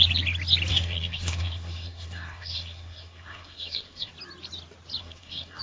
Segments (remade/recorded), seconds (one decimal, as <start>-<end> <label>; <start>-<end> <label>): 0.0-0.7 recorded; 0.7-4.1 remade; 4.1-5.0 recorded; 5.0-5.6 remade

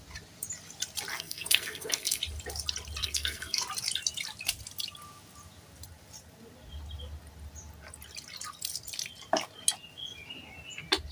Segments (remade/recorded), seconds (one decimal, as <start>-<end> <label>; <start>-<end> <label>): 0.0-1.1 recorded; 1.1-2.2 remade; 2.2-3.0 recorded; 3.0-3.6 remade; 3.6-11.1 recorded

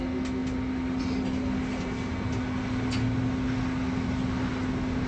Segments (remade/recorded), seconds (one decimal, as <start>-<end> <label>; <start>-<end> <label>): 0.0-5.1 recorded

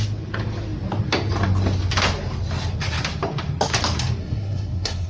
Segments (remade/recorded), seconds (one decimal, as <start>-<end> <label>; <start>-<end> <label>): 0.0-4.2 recorded; 4.2-5.1 remade